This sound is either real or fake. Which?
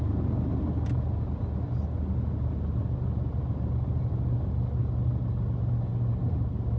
real